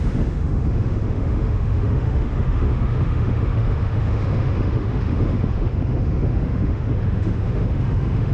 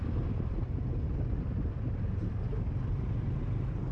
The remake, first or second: first